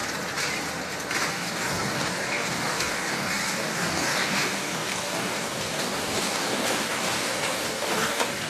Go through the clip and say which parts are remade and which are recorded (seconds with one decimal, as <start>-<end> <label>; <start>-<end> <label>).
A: 0.0-1.3 recorded; 1.3-8.5 remade